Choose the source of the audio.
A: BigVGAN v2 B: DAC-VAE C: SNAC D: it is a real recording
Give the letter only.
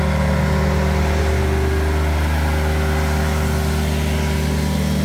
D